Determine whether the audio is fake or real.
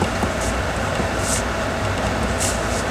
real